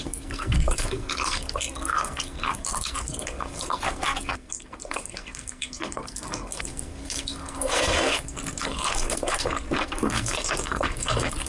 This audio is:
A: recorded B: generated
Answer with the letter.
B